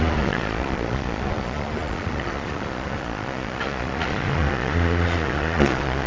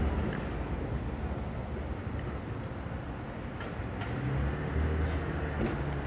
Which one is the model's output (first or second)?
first